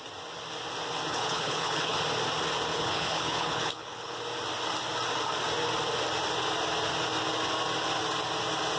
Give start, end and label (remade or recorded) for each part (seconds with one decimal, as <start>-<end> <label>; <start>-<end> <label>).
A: 0.0-1.1 recorded; 1.1-2.0 remade; 2.0-2.7 recorded; 2.7-4.2 remade; 4.2-8.8 recorded